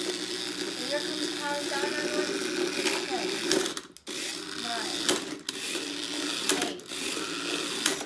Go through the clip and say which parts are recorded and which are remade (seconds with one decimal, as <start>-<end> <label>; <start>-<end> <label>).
0.0-8.1 recorded